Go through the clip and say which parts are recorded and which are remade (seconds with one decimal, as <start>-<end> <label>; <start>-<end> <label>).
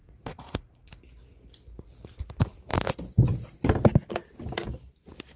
0.0-0.9 remade; 0.9-5.4 recorded